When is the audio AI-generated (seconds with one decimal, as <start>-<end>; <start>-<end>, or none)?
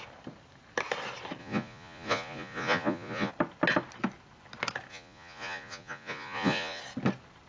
1.4-3.3; 4.9-6.8